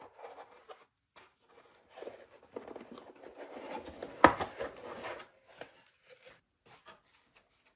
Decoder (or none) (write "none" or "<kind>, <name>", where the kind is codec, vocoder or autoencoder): none